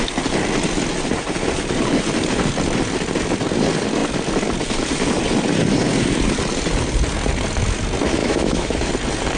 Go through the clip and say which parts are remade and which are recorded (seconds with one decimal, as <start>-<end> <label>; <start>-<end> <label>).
0.0-8.2 recorded; 8.2-8.9 remade; 8.9-9.4 recorded